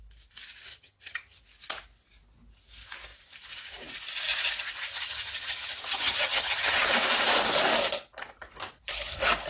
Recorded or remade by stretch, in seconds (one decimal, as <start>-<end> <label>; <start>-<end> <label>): 0.0-0.7 recorded; 0.7-1.4 remade; 1.4-4.9 recorded; 4.9-6.9 remade; 6.9-9.5 recorded